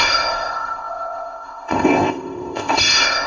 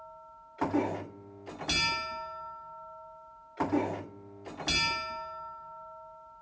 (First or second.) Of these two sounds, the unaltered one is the second